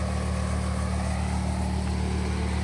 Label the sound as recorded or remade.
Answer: recorded